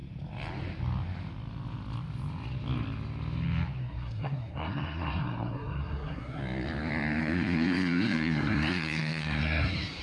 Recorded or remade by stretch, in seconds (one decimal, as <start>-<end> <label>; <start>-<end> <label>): 0.0-3.8 recorded; 3.8-6.4 remade; 6.4-7.2 recorded; 7.2-10.0 remade

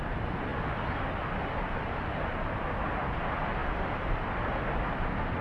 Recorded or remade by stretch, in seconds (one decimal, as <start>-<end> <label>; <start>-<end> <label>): 0.0-5.4 recorded

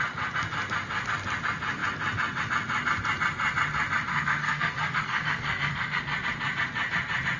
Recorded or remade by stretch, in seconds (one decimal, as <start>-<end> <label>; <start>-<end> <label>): 0.0-4.1 recorded; 4.1-6.0 remade; 6.0-7.4 recorded

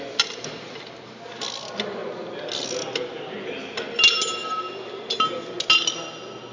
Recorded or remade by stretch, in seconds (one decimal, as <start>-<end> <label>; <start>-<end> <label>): 0.0-6.5 recorded